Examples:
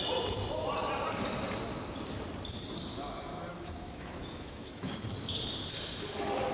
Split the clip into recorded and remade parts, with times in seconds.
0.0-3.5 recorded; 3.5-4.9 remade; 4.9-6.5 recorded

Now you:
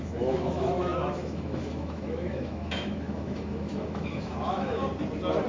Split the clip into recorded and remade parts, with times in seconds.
0.0-4.8 remade; 4.8-5.5 recorded

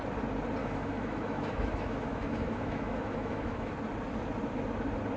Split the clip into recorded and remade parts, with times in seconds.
0.0-0.6 recorded; 0.6-3.7 remade; 3.7-5.2 recorded